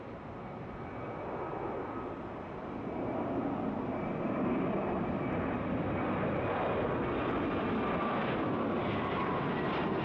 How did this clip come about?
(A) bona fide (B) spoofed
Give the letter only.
A